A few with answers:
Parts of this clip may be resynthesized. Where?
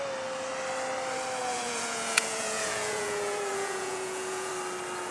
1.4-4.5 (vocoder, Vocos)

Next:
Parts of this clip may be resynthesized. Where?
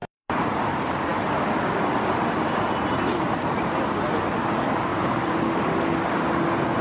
0.0-0.6 (vocoder, BigVGAN v2); 4.9-5.4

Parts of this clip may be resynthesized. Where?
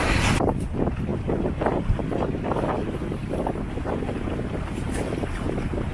none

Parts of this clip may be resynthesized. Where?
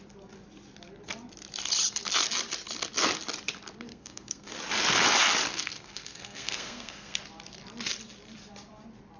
3.9-4.6 (codec, SNAC); 5.5-7.2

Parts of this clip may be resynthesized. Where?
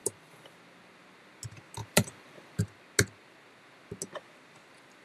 0.0-0.6 (vocoder, BigVGAN v2); 1.8-2.6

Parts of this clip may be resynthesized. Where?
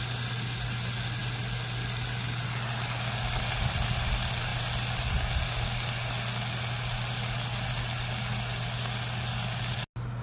none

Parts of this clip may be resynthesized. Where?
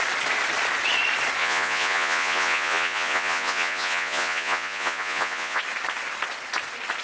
1.4-5.6 (vocoder, Vocos)